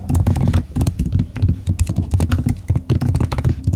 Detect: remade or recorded remade